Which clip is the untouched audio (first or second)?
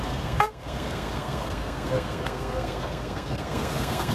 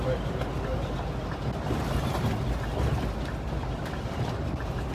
second